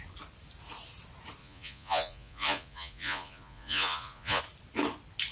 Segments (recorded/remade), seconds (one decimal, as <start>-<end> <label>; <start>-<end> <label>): 0.0-1.4 recorded; 1.4-4.4 remade; 4.4-5.3 recorded